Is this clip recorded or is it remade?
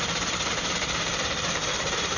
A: remade